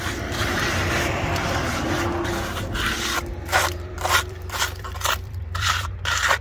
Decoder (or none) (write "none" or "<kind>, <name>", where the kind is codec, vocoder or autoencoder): vocoder, BigVGAN v2